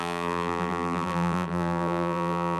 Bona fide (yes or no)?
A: no